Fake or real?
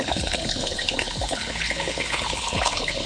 fake